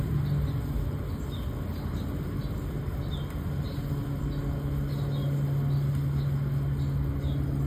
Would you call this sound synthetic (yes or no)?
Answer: no